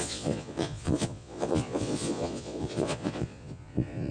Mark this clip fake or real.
fake